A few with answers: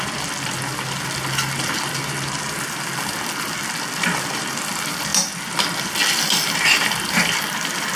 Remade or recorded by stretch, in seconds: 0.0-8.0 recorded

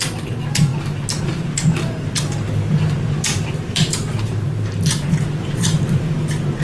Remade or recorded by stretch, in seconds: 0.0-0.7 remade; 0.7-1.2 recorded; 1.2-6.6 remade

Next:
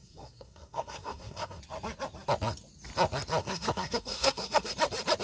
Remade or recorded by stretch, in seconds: 0.0-1.6 remade; 1.6-3.4 recorded; 3.4-4.7 remade; 4.7-5.2 recorded

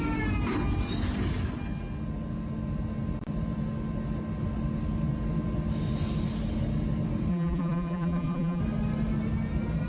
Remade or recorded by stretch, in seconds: 0.0-7.3 recorded; 7.3-8.6 remade; 8.6-9.9 recorded

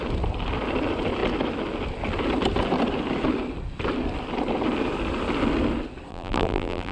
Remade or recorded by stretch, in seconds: 0.0-6.1 recorded; 6.1-6.9 remade